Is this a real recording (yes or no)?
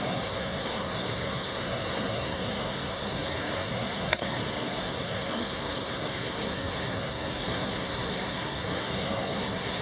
no